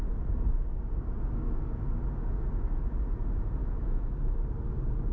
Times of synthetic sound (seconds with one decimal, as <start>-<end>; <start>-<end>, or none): 3.6-4.1